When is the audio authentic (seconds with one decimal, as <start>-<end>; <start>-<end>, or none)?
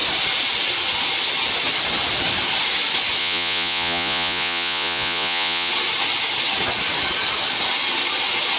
0.0-3.2; 5.7-8.6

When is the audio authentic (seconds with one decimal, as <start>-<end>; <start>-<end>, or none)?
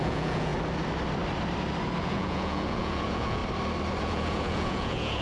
0.5-2.0; 3.4-4.0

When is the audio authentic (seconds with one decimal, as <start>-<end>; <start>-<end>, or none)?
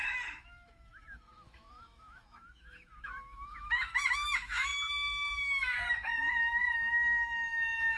none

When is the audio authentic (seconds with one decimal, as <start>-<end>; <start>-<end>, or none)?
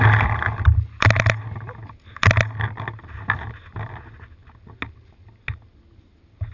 0.0-6.5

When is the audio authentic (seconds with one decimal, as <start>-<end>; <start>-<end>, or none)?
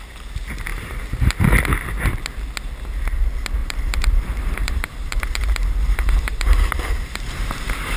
0.0-0.7; 1.3-3.6; 7.5-8.0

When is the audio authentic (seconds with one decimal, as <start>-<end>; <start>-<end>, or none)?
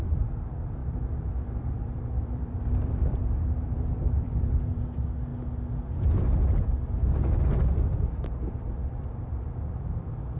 5.3-7.4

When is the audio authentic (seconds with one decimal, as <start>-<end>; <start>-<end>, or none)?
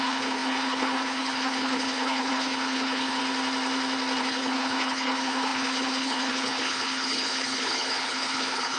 3.2-4.2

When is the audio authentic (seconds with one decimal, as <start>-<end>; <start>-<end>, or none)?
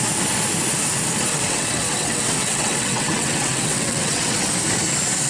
0.0-1.3; 4.5-5.3